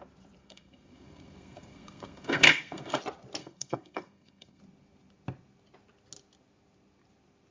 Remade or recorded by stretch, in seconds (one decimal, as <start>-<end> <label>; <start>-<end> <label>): 0.0-0.4 recorded; 0.4-3.0 remade; 3.0-3.4 recorded; 3.4-4.6 remade; 4.6-7.5 recorded